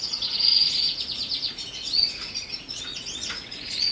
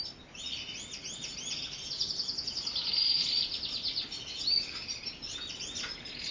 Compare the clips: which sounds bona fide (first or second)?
second